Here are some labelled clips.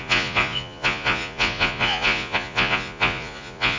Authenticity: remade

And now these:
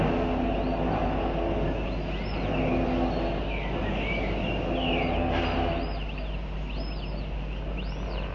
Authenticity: recorded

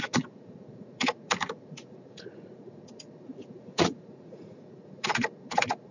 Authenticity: remade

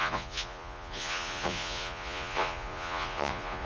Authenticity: remade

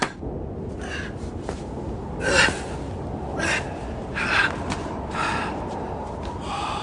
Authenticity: recorded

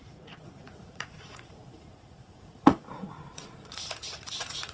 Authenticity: remade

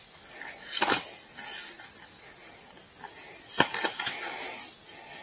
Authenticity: recorded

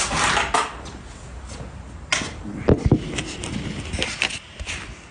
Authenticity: recorded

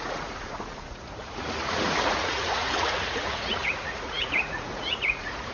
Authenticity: remade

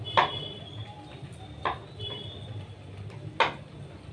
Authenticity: recorded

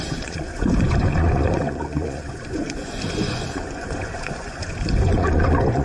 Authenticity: remade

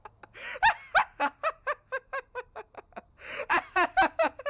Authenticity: recorded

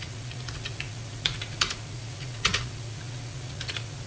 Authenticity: remade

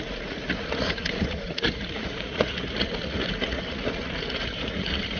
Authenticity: remade